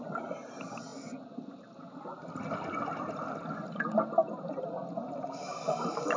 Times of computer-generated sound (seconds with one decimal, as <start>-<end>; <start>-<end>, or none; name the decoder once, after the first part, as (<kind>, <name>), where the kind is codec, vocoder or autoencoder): none